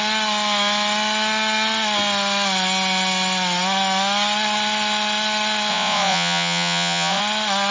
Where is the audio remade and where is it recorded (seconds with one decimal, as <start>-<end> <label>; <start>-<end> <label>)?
0.0-5.7 recorded; 5.7-7.2 remade; 7.2-7.7 recorded